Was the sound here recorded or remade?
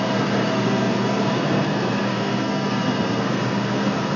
remade